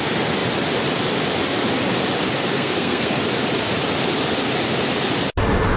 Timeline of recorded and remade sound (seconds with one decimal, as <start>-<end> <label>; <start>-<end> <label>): 0.0-2.4 recorded; 2.4-3.2 remade; 3.2-5.8 recorded